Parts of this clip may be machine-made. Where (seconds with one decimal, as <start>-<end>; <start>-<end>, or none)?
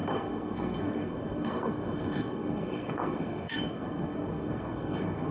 0.0-5.3